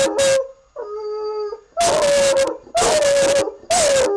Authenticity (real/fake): real